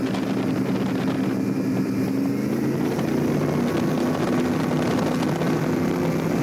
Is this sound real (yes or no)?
yes